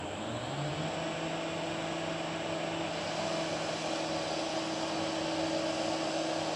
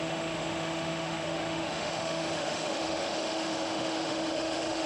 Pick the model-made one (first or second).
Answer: second